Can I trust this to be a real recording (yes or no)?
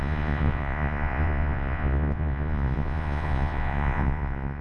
no